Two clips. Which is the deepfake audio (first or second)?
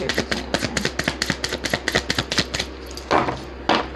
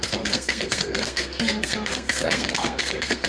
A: second